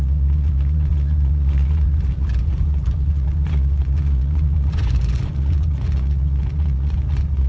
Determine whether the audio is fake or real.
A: fake